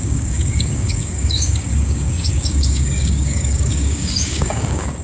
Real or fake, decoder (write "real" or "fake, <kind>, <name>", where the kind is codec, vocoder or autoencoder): fake, codec, DAC